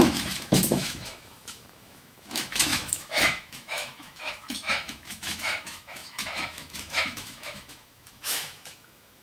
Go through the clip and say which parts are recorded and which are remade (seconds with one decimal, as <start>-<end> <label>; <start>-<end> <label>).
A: 0.0-9.2 remade